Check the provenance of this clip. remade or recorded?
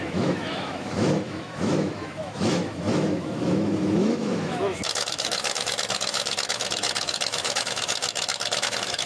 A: remade